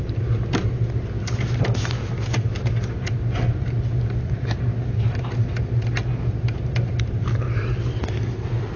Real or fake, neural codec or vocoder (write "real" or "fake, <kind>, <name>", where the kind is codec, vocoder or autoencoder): real